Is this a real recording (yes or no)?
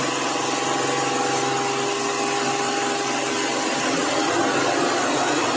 yes